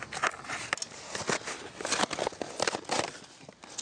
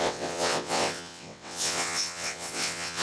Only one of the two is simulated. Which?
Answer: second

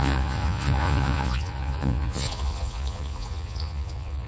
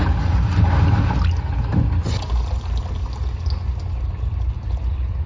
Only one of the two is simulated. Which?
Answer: first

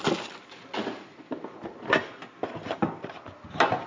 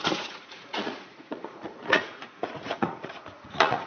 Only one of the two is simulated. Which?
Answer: second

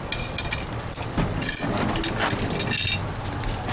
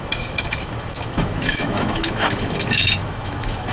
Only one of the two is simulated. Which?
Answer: second